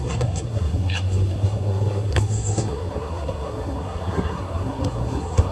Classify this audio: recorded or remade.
remade